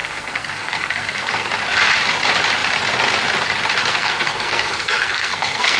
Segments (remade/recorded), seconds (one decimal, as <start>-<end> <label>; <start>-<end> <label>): 0.0-1.5 remade; 1.5-3.8 recorded; 3.8-5.8 remade